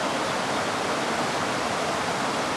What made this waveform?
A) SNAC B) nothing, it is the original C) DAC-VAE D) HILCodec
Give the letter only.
B